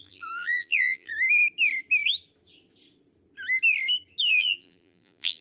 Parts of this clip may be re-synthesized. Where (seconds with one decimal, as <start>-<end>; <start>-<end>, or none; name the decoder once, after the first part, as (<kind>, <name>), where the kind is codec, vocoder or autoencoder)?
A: 0.0-1.1 (vocoder, BigVGAN v2); 4.3-5.4